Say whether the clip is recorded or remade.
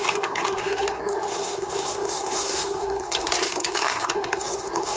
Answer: remade